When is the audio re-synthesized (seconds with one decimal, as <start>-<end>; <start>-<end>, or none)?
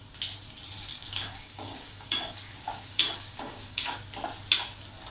0.9-4.0